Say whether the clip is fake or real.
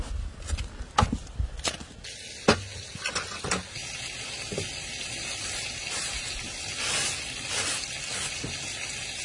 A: real